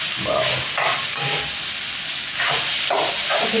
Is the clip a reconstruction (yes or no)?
no